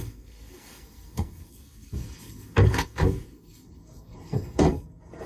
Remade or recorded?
remade